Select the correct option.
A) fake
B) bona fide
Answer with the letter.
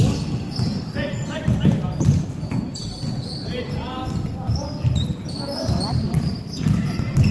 B